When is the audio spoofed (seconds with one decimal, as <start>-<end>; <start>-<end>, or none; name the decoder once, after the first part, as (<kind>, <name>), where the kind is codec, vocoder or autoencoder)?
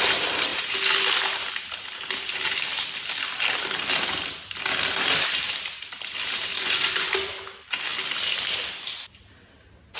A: 6.5-7.1 (vocoder, Vocos)